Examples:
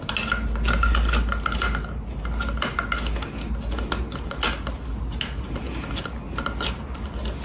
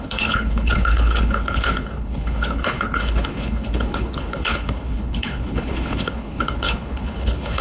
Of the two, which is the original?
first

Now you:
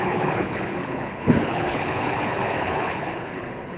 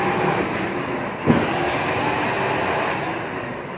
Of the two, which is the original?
second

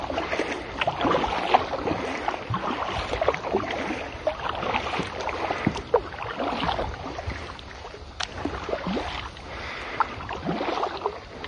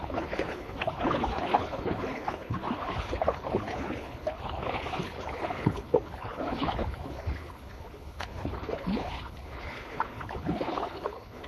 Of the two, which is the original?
first